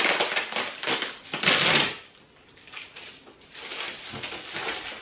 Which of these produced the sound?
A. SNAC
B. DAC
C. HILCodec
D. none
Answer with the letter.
D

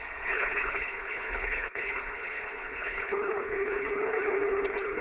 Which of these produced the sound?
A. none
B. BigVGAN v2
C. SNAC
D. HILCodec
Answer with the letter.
D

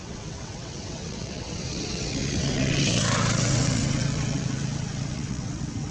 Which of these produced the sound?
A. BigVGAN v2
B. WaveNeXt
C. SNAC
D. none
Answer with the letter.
B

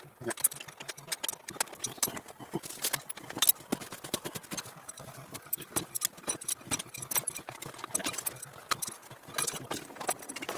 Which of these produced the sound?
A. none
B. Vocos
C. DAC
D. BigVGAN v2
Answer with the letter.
A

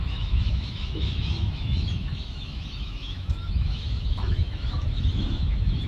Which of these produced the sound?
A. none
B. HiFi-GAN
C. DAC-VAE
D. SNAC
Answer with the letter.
C